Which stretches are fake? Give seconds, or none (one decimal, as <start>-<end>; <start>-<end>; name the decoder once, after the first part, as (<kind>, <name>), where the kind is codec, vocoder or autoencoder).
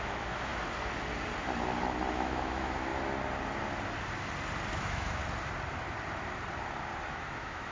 0.0-0.5 (autoencoder, DAC-VAE); 2.1-2.9; 4.7-5.2; 7.1-7.7